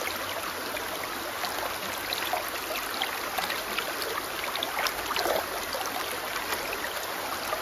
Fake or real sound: real